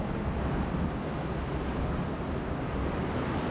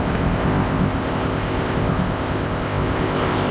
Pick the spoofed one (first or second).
second